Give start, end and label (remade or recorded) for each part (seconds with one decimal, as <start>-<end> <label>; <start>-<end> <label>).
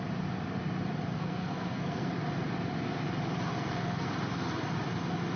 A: 0.0-1.1 recorded; 1.1-2.1 remade; 2.1-3.5 recorded; 3.5-4.1 remade; 4.1-5.4 recorded